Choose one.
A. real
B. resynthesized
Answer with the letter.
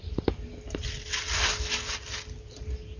A